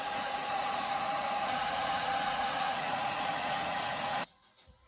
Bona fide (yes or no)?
no